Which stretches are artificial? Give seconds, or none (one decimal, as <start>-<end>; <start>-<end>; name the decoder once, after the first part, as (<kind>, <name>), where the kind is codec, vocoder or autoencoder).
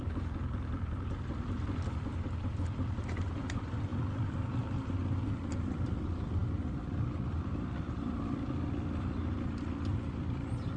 0.0-5.0 (vocoder, BigVGAN v2); 5.5-6.4; 6.9-10.8